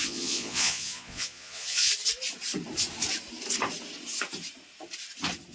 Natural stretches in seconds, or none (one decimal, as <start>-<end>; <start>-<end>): 1.9-5.5